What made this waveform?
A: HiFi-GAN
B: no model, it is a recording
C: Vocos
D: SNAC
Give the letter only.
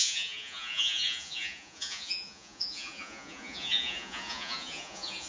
C